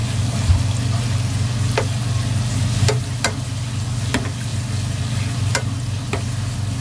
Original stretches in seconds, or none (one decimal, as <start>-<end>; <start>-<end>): 0.0-6.8